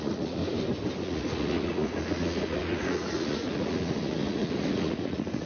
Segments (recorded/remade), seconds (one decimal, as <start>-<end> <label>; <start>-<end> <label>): 0.0-0.4 remade; 0.4-1.0 recorded; 1.0-5.5 remade